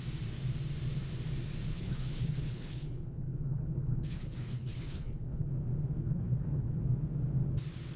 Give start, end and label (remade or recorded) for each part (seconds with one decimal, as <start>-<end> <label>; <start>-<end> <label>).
0.0-1.7 recorded; 1.7-5.5 remade; 5.5-6.0 recorded; 6.0-6.8 remade; 6.8-8.0 recorded